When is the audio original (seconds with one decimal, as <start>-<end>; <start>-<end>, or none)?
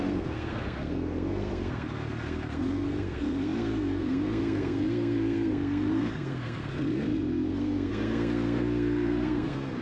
none